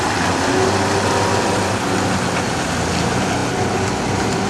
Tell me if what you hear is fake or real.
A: real